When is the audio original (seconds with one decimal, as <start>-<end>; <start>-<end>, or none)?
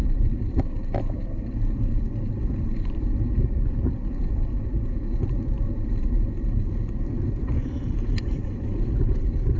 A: none